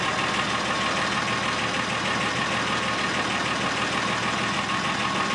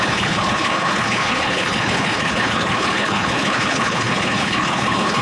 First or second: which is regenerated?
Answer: second